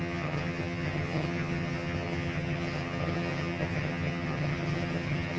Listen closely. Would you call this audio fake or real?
fake